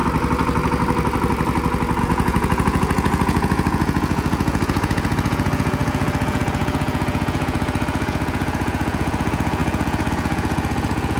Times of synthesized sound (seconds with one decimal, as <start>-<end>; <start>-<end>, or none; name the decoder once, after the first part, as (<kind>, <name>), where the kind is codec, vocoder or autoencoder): 2.0-11.2 (vocoder, Vocos)